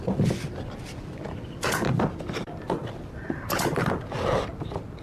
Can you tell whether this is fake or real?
real